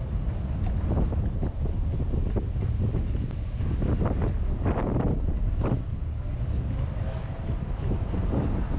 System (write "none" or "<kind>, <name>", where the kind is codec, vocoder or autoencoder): none